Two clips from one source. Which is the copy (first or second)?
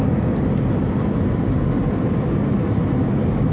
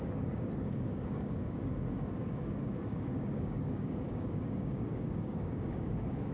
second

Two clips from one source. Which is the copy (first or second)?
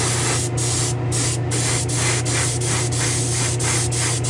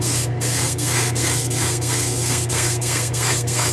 second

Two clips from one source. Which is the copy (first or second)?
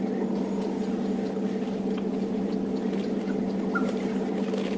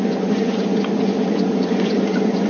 second